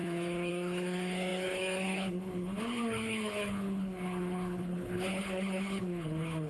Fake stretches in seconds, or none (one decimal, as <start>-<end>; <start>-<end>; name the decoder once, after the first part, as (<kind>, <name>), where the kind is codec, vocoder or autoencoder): 0.0-6.5 (codec, HILCodec)